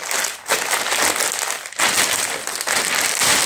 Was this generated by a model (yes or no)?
no